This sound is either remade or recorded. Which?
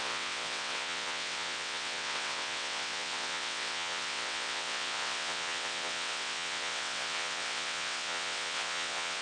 remade